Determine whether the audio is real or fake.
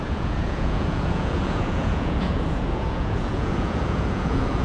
fake